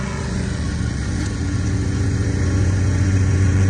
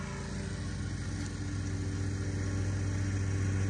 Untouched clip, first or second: second